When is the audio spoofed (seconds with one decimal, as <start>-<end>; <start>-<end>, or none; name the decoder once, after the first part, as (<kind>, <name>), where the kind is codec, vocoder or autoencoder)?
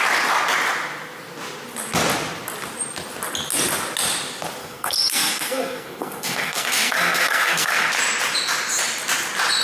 4.6-7.9 (codec, SNAC)